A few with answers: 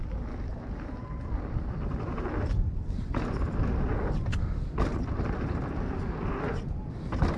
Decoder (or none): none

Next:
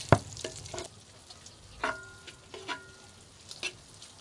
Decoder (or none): none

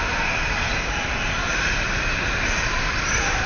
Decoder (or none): none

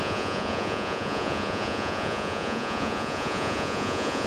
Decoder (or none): vocoder, Vocos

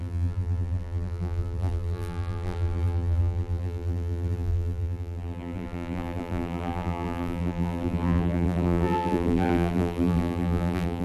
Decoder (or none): vocoder, BigVGAN v2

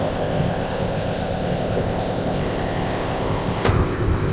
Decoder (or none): codec, ZipCodec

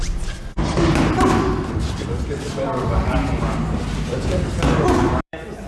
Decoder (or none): vocoder, BigVGAN v2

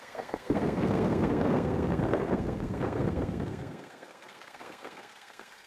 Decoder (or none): codec, SNAC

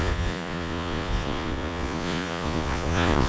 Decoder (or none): vocoder, Vocos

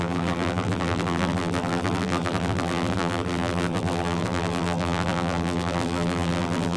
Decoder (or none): vocoder, BigVGAN v2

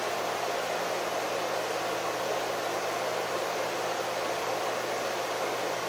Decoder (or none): none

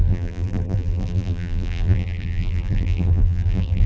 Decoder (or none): vocoder, BigVGAN v2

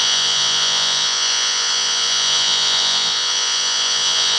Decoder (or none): vocoder, Vocos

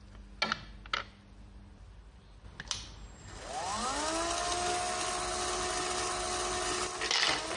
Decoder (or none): none